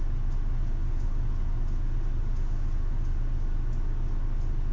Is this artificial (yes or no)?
no